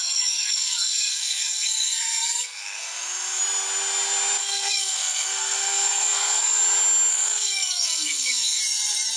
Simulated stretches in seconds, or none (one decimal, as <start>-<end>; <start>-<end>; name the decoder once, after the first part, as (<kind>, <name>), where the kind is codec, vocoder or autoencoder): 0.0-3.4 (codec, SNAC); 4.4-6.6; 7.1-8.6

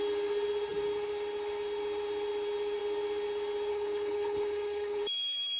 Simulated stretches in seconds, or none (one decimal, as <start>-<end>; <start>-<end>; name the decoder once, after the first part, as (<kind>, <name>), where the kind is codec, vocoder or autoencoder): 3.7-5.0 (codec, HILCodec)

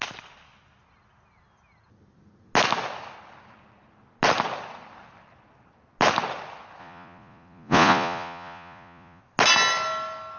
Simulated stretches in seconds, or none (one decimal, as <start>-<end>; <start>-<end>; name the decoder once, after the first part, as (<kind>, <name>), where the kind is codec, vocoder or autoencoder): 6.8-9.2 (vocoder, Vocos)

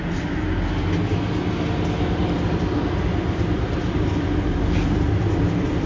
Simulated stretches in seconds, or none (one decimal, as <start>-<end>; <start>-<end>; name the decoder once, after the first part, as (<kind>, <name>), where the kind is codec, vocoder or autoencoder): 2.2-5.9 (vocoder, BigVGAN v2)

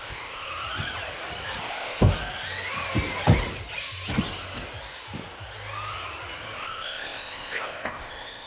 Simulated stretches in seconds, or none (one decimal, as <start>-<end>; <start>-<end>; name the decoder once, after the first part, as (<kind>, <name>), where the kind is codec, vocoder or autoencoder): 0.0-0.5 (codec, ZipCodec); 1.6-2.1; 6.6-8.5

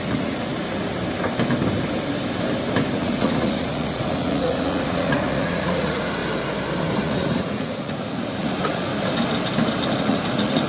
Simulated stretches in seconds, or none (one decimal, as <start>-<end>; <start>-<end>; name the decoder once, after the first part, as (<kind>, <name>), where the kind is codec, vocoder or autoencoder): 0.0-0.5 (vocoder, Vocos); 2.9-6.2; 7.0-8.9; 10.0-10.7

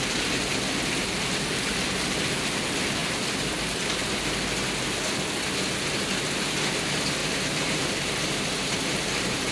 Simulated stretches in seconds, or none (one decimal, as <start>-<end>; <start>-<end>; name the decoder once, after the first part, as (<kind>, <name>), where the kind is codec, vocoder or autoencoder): 7.2-9.5 (vocoder, BigVGAN v2)

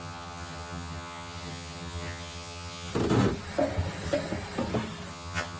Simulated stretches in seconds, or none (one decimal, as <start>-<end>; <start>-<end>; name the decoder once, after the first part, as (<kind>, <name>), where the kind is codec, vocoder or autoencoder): 0.0-2.9 (vocoder, HiFi-GAN); 5.1-5.6